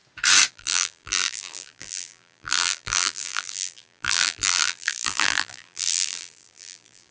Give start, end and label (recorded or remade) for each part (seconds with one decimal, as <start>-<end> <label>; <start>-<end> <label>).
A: 0.0-0.5 recorded; 0.5-7.1 remade